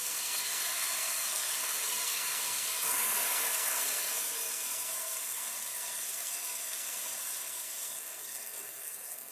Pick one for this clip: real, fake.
fake